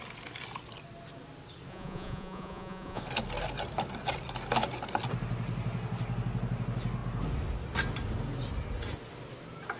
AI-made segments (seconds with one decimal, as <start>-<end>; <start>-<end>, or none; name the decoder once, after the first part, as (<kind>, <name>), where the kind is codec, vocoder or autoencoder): 1.7-3.0 (vocoder, Vocos)